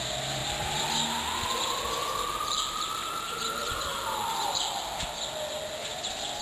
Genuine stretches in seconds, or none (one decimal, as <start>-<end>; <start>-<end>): 0.0-0.4; 0.9-2.0; 2.9-3.9; 5.0-6.4